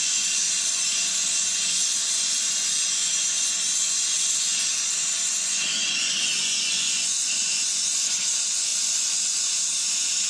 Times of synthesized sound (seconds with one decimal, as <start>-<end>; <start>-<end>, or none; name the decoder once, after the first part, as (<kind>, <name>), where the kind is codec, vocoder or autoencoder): 0.0-10.3 (vocoder, Vocos)

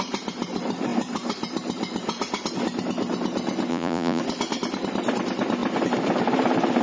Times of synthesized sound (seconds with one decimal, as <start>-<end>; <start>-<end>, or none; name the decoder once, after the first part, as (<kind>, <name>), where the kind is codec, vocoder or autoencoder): 3.7-4.2 (vocoder, Vocos)